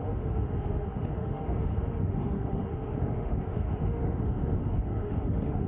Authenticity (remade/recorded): remade